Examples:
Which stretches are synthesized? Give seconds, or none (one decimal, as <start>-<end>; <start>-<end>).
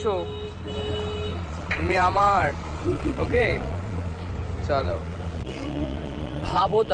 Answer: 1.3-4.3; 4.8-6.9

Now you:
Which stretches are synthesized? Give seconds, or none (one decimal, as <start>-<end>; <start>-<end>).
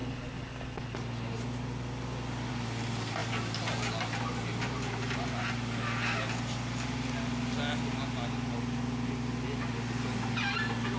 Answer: none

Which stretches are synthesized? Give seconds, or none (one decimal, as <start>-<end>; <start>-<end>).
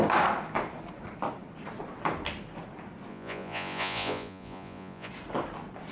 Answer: 3.1-5.1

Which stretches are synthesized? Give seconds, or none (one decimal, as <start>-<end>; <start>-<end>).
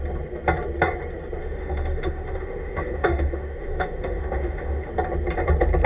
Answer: 1.4-4.9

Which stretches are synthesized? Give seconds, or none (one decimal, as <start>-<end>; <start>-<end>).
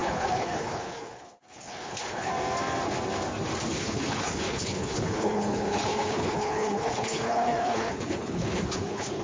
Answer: 0.0-2.3; 3.7-9.2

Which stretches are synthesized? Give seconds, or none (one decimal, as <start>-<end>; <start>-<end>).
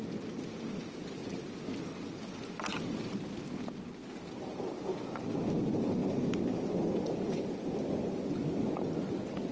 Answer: 0.0-2.7; 4.5-7.8